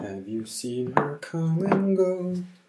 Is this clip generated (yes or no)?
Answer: yes